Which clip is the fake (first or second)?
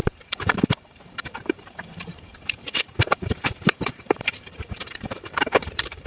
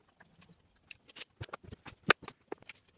first